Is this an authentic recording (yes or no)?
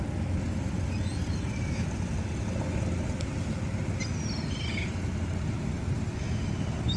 yes